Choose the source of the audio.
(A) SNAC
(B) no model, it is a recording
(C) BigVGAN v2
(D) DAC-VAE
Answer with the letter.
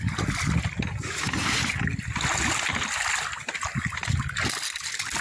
B